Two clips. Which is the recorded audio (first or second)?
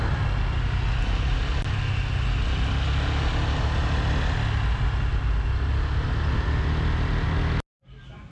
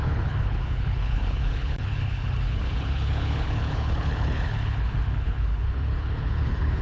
first